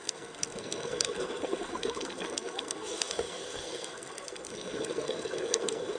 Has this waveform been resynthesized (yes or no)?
yes